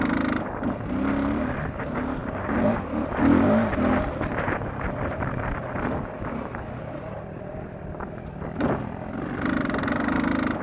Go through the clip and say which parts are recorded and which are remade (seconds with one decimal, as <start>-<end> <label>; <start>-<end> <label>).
0.0-10.6 recorded